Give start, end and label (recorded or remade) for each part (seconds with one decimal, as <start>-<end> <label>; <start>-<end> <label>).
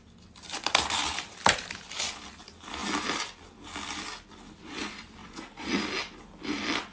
0.0-5.2 recorded; 5.2-5.8 remade; 5.8-6.9 recorded